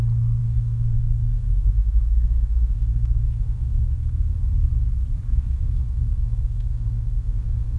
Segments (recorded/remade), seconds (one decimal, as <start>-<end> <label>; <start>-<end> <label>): 0.0-0.4 recorded; 0.4-4.4 remade; 4.4-5.3 recorded; 5.3-7.8 remade